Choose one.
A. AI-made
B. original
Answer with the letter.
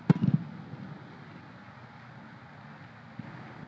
B